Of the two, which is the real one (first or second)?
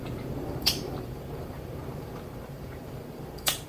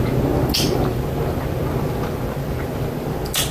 second